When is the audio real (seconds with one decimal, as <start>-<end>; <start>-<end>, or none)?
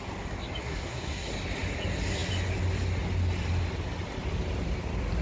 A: 0.0-0.6; 1.3-5.2